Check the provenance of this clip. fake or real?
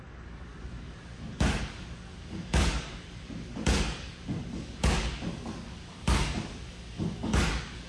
fake